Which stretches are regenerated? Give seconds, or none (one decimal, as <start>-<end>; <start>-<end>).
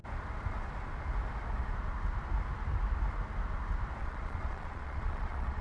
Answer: 4.0-5.6